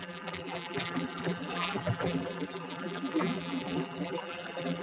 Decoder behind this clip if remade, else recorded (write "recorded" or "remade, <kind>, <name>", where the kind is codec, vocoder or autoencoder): remade, vocoder, BigVGAN v2